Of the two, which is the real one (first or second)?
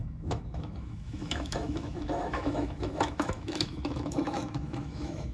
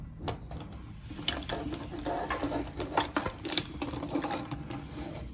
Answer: second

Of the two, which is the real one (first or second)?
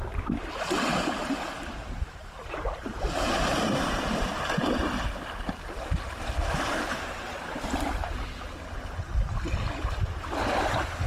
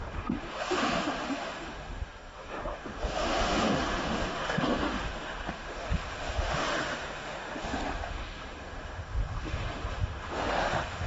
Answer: first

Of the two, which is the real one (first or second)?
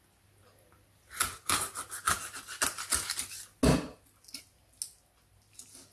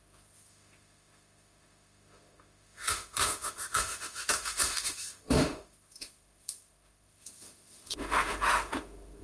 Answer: first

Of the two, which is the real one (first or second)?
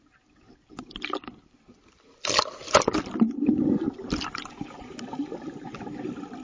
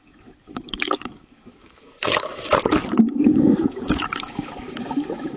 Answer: first